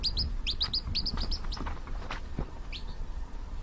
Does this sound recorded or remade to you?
remade